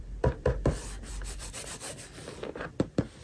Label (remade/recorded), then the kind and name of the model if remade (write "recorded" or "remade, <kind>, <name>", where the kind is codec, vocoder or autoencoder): remade, vocoder, BigVGAN v2